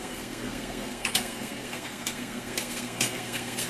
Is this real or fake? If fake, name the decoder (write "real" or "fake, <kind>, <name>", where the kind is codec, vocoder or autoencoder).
fake, codec, SNAC